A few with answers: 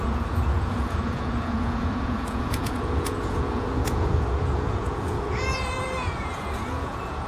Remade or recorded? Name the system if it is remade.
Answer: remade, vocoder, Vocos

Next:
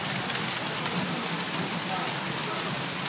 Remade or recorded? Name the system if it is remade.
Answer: recorded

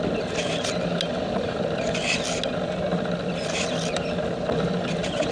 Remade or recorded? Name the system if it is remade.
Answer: recorded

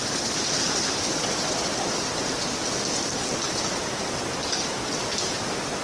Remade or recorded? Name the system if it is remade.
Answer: recorded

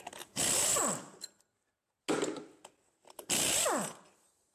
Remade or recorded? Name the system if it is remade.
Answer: recorded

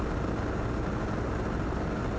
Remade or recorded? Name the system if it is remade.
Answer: recorded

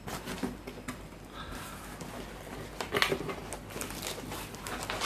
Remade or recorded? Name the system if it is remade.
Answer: recorded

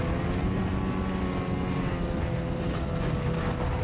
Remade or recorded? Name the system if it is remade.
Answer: recorded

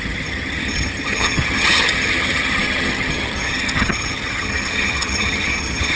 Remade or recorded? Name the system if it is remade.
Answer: remade, vocoder, HiFi-GAN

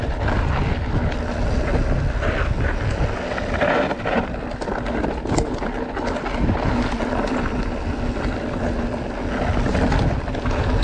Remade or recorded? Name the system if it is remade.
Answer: recorded